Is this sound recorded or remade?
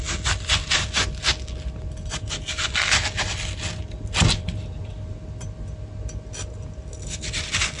recorded